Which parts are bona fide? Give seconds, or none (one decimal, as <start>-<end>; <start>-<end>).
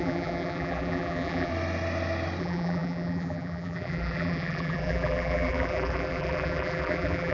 1.5-2.4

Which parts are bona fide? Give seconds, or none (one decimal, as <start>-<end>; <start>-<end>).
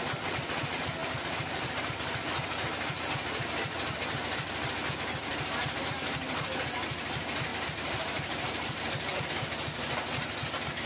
0.0-7.5; 9.3-10.9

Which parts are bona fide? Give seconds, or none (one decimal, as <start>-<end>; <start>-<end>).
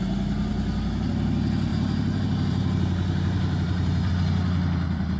0.0-1.7; 4.1-5.2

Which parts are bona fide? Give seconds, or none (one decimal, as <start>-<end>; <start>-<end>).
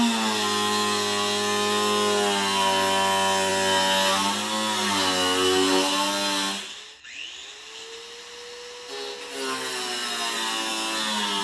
0.0-11.4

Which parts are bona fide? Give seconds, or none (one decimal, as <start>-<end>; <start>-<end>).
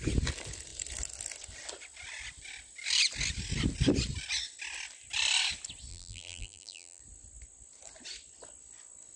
0.0-5.9; 7.0-9.2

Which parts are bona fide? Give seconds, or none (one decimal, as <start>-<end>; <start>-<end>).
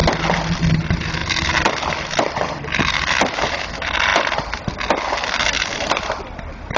0.0-1.2; 3.0-6.8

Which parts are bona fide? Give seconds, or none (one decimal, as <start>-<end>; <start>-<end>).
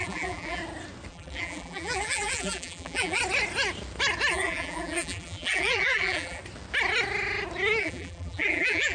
0.6-1.1; 3.2-4.3; 6.4-7.8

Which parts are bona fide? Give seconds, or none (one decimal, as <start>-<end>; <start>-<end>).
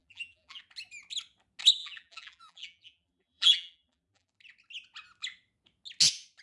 0.6-1.8; 4.3-6.4